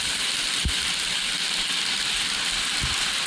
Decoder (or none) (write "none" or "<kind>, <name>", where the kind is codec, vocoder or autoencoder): none